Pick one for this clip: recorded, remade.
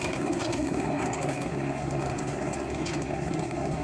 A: remade